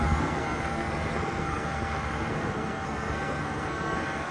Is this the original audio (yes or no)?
no